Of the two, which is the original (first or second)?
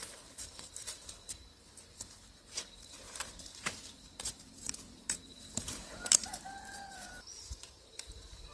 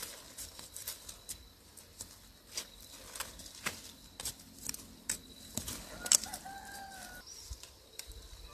second